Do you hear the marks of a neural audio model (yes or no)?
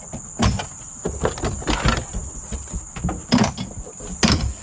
no